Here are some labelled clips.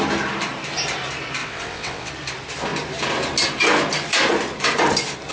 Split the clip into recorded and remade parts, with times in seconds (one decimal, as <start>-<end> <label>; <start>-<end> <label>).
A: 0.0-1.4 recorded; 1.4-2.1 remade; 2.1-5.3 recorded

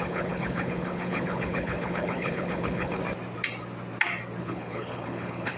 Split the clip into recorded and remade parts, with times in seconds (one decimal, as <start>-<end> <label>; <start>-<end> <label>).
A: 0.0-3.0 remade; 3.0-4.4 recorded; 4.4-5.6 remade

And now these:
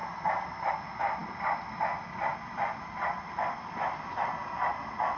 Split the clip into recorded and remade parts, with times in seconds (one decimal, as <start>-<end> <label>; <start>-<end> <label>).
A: 0.0-0.7 remade; 0.7-1.2 recorded; 1.2-4.3 remade; 4.3-5.2 recorded

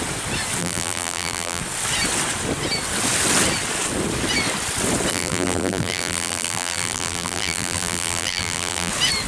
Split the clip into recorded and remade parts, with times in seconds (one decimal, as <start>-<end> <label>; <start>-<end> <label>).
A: 0.0-0.6 recorded; 0.6-1.6 remade; 1.6-5.1 recorded; 5.1-8.9 remade; 8.9-9.3 recorded